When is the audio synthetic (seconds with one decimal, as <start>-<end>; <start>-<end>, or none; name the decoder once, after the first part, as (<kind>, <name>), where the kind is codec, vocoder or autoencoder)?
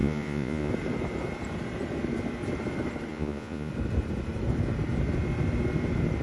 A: 0.0-0.7 (vocoder, Vocos); 3.1-3.7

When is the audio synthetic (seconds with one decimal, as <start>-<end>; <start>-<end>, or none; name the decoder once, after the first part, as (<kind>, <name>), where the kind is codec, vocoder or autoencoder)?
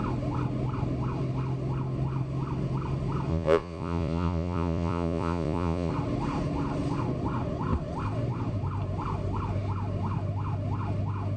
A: 3.3-5.9 (vocoder, Vocos)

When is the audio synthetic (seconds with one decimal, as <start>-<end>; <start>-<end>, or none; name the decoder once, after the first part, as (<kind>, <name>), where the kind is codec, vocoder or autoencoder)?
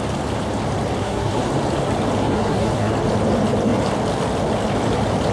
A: 1.0-1.5 (codec, SNAC); 2.2-2.9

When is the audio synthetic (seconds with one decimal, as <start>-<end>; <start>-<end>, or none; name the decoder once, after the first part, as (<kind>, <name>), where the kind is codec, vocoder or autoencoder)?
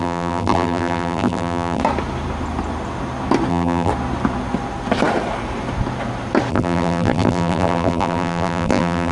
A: 0.0-1.8 (vocoder, BigVGAN v2); 3.5-3.9; 6.5-9.1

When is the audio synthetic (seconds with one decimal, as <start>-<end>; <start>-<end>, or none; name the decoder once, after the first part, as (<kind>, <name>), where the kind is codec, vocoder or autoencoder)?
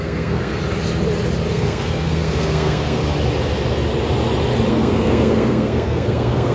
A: 0.0-0.6 (codec, SNAC); 1.5-3.0; 4.7-6.5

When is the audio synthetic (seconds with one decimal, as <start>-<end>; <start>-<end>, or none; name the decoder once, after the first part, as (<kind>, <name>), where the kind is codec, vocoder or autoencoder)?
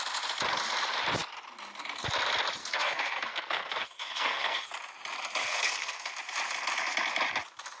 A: 2.6-4.7 (codec, SNAC); 5.4-6.1